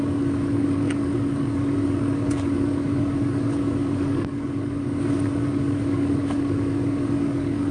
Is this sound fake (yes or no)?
yes